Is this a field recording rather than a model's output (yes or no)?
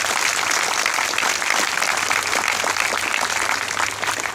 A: yes